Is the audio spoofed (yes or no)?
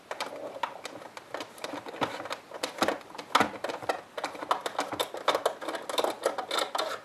no